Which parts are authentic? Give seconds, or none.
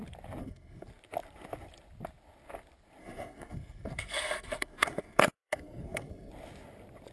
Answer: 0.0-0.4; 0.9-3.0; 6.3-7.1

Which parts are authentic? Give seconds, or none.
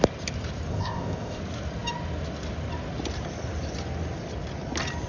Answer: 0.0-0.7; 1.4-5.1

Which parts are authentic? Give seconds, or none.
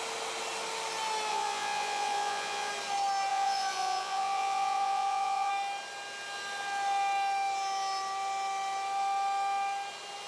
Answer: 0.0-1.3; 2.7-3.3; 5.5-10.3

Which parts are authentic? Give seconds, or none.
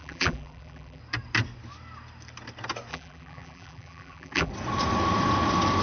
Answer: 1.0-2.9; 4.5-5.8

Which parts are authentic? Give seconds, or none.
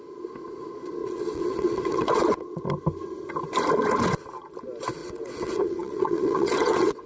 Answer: 0.0-1.0; 2.7-5.0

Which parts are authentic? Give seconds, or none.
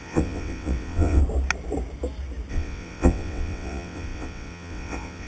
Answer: 1.2-2.5